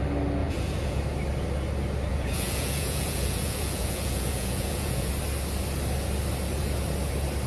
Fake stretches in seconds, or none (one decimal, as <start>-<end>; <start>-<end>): 0.4-1.0; 2.1-5.1